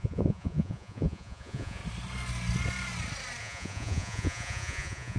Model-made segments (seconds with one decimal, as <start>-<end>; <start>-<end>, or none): 0.0-1.8; 3.4-5.2